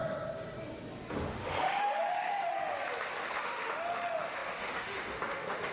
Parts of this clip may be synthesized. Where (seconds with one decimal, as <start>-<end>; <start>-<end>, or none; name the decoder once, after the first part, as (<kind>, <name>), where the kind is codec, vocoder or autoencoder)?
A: 1.3-2.5 (autoencoder, DAC-VAE); 3.4-5.7